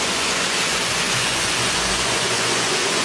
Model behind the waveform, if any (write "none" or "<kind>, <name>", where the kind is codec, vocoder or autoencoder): vocoder, Vocos